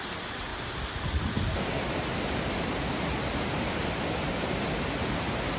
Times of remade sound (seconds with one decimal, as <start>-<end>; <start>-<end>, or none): none